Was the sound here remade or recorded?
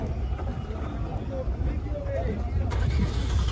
recorded